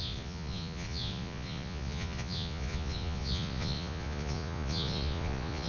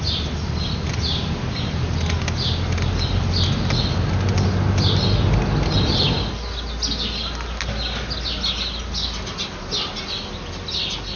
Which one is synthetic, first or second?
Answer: first